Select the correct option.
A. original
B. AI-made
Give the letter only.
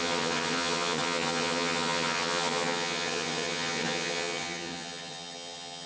B